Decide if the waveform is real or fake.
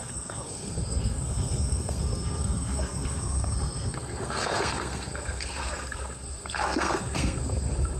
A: fake